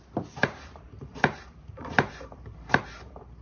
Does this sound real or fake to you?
fake